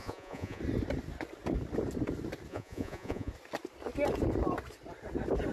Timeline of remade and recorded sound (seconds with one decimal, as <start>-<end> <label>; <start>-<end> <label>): 0.0-0.6 remade; 0.6-2.5 recorded; 2.5-3.3 remade; 3.3-5.5 recorded